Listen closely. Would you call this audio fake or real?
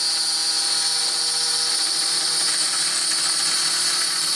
real